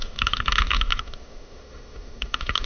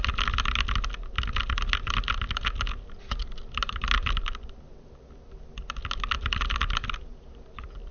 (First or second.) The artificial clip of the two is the first